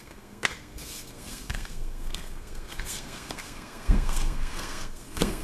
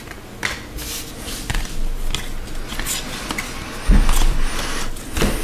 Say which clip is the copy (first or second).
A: first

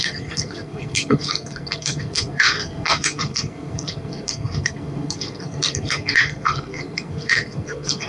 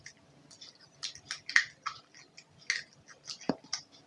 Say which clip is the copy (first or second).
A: first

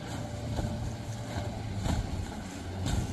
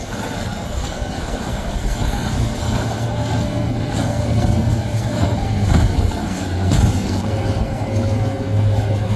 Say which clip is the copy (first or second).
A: second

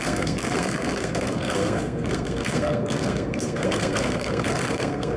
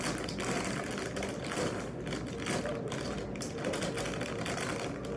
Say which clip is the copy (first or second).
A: first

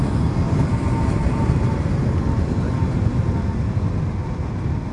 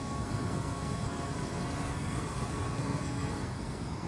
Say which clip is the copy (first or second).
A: second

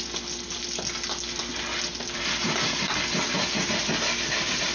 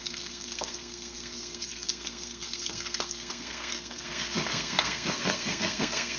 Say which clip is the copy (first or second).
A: second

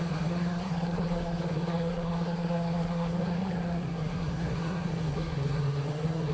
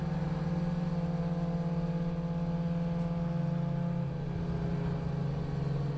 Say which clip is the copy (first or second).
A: first